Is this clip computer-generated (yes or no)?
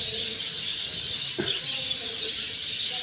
no